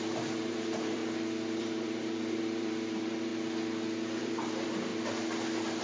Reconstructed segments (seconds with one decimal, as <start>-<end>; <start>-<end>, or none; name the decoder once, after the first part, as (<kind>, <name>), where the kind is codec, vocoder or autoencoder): 0.0-1.0 (vocoder, BigVGAN v2); 1.6-3.3; 4.2-4.9